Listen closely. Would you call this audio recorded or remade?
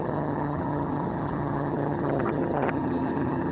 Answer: remade